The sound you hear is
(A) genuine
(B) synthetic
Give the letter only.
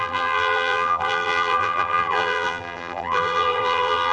B